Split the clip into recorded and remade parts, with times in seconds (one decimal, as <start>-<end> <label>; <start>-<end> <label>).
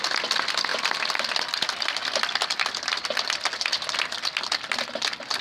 0.0-0.7 recorded; 0.7-2.6 remade; 2.6-5.4 recorded